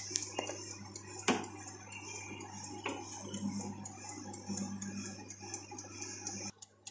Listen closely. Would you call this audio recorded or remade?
recorded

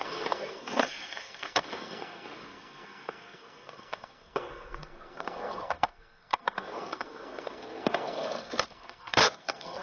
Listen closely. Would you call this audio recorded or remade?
remade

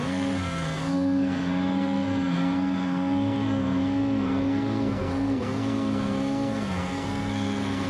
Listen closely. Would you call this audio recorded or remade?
remade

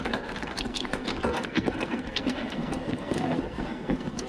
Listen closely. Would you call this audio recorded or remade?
remade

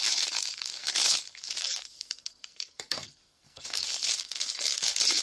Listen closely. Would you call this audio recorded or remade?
remade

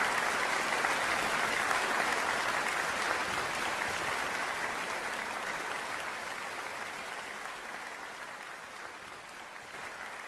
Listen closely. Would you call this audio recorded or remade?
recorded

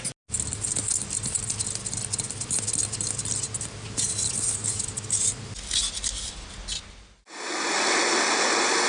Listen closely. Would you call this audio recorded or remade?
recorded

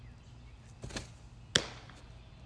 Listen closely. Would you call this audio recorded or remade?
recorded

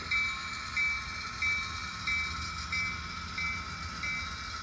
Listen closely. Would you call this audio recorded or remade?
recorded